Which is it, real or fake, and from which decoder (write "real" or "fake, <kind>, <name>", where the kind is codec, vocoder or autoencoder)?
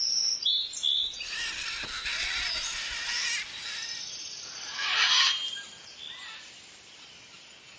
real